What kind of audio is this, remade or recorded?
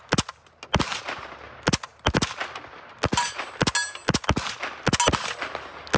recorded